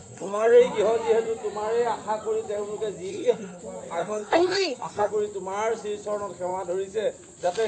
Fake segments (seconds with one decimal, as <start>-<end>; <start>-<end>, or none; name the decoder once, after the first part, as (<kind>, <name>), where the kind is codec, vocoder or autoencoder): 0.0-0.6 (codec, SNAC); 3.1-3.6; 4.0-5.1